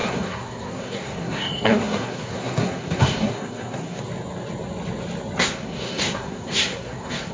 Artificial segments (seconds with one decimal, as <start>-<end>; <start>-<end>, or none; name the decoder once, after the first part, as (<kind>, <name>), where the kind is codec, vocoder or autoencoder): 0.0-4.0 (codec, SNAC); 5.4-7.3

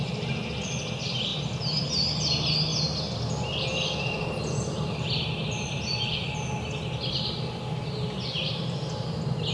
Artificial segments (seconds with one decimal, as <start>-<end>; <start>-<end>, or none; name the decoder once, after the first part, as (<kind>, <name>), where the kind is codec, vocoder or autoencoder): none

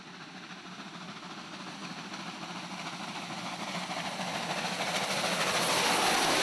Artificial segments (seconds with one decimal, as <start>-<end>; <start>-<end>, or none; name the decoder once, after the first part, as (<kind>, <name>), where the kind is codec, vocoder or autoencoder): none